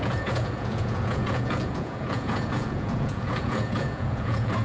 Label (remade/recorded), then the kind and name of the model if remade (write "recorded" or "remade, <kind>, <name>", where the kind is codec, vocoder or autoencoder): remade, vocoder, Vocos